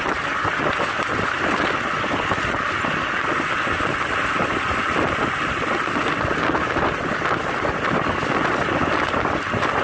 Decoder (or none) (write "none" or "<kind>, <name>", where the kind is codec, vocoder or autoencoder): none